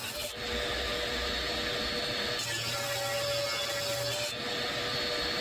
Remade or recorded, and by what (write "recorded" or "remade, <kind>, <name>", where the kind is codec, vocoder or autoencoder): recorded